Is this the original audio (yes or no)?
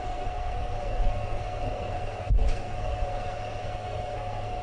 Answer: no